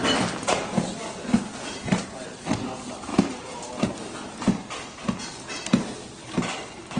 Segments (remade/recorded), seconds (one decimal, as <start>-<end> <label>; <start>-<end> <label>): 0.0-7.0 recorded